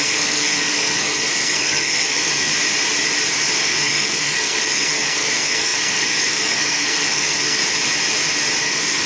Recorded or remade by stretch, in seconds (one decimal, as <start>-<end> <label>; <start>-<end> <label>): 0.0-2.5 remade; 2.5-3.6 recorded; 3.6-7.6 remade; 7.6-8.6 recorded; 8.6-9.1 remade